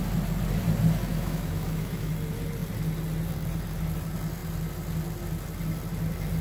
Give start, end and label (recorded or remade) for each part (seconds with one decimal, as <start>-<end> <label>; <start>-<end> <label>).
0.0-1.1 recorded; 1.1-2.1 remade; 2.1-6.4 recorded